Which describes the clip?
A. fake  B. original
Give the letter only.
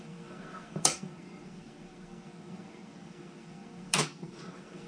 A